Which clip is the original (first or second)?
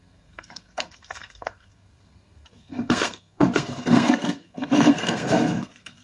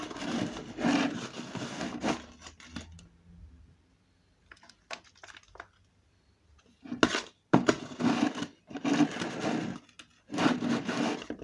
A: second